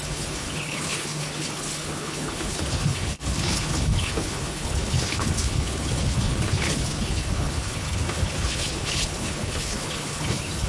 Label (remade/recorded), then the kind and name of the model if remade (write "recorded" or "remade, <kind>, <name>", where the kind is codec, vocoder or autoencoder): remade, codec, HILCodec